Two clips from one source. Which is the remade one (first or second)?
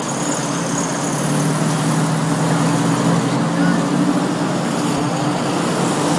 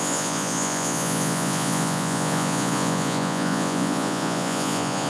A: second